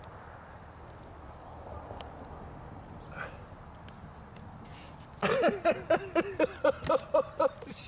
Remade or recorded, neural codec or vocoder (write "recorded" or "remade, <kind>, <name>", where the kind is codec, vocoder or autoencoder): recorded